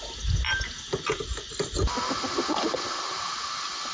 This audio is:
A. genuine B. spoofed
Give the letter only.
A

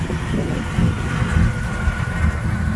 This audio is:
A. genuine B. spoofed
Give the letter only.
A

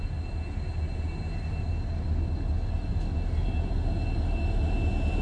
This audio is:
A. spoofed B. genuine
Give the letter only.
B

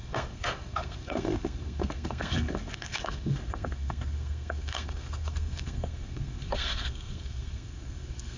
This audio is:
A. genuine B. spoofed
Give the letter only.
B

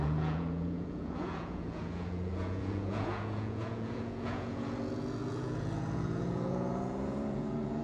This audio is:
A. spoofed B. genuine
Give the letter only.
A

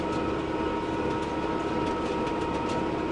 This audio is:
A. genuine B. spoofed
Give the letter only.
A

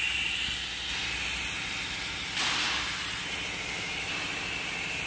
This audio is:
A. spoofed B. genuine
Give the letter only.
B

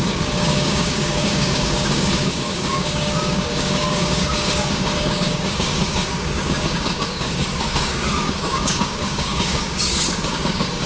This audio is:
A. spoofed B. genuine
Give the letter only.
A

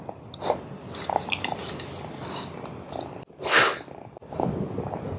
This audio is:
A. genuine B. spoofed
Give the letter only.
A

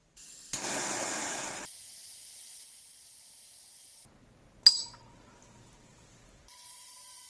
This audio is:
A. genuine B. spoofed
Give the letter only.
A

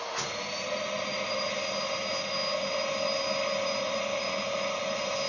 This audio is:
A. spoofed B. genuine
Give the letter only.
B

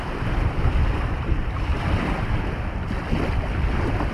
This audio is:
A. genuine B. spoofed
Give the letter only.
B